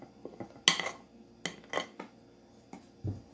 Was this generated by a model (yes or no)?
no